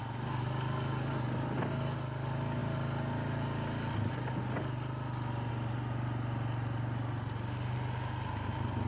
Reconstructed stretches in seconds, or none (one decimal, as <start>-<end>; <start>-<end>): none